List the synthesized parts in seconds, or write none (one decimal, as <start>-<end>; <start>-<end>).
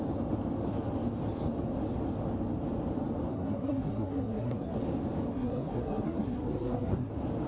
3.3-4.8; 5.3-7.1